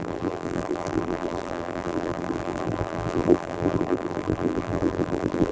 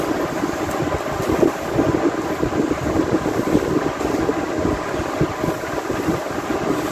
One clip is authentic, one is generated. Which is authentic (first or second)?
second